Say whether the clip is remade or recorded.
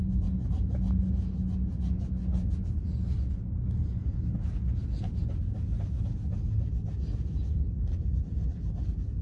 recorded